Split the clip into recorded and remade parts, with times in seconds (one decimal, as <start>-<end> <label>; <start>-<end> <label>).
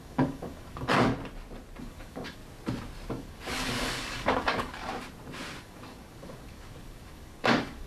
0.0-1.1 remade; 1.1-1.8 recorded; 1.8-2.4 remade; 2.4-3.1 recorded; 3.1-4.9 remade; 4.9-5.6 recorded; 5.6-7.9 remade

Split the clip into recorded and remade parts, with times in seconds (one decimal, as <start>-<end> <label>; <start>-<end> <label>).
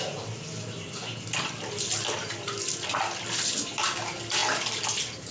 0.0-5.3 recorded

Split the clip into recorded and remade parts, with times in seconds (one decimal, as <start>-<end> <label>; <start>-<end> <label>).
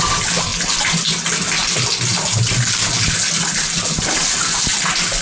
0.0-5.2 recorded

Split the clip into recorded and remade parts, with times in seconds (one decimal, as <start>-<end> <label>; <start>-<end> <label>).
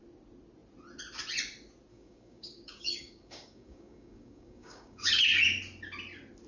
0.0-1.9 recorded; 1.9-5.1 remade; 5.1-6.5 recorded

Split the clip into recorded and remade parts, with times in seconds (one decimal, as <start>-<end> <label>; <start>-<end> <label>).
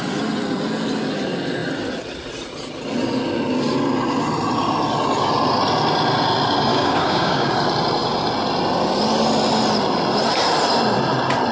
0.0-6.7 recorded; 6.7-7.5 remade; 7.5-11.5 recorded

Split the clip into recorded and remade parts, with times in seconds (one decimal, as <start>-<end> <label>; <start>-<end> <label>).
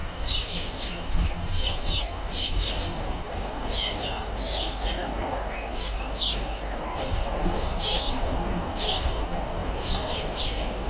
0.0-10.9 remade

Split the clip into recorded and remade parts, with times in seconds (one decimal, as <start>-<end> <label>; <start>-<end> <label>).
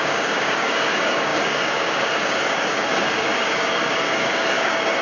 0.0-5.0 remade